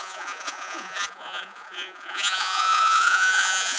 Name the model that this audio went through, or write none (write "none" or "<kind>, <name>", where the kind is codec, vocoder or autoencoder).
vocoder, Vocos